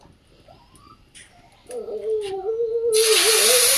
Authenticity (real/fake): real